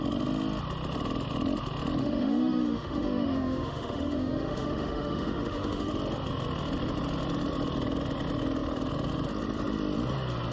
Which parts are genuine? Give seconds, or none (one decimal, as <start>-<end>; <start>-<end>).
0.0-2.0; 5.9-10.5